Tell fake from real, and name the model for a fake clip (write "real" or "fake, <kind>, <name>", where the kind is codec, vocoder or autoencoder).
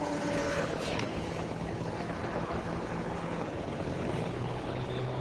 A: fake, codec, HILCodec